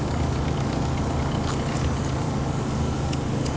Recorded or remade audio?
remade